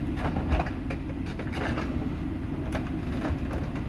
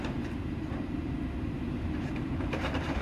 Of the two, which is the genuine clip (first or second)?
first